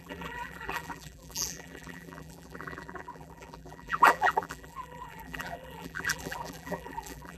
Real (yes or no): no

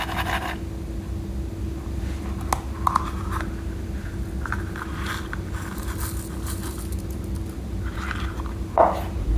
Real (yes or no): yes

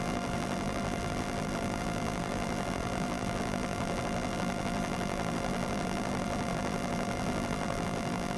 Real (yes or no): no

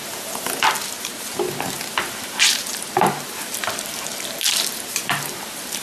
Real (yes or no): no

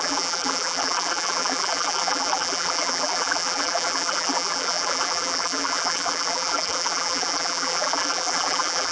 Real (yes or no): no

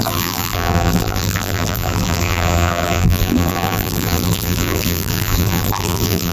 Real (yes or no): no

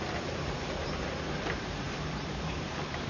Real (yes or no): no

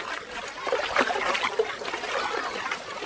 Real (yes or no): yes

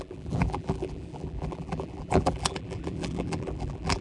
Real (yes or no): no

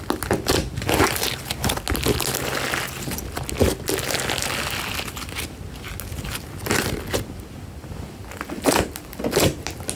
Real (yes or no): yes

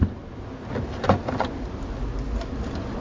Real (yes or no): yes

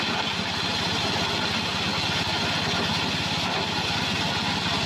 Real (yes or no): yes